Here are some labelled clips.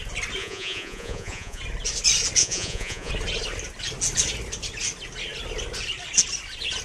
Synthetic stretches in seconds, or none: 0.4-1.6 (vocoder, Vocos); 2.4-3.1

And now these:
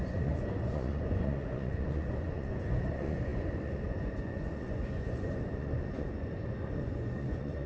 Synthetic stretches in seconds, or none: 0.0-7.7 (vocoder, Vocos)

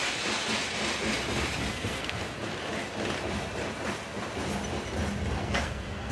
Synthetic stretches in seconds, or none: 1.7-2.2 (codec, SNAC); 5.4-6.1